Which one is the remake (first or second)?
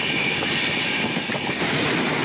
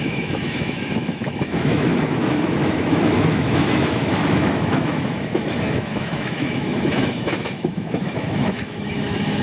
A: second